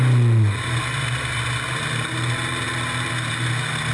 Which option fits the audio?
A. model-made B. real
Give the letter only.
B